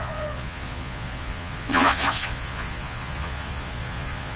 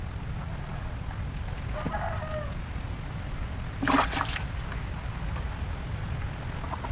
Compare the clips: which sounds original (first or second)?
second